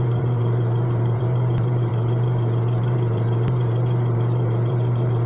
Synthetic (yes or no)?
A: yes